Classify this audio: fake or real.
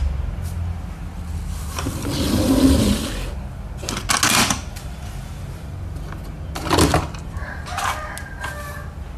real